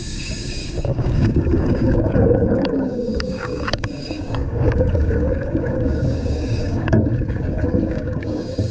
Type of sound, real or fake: fake